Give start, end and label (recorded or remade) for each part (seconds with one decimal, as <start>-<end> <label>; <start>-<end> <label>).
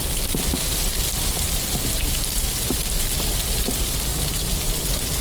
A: 0.0-5.2 recorded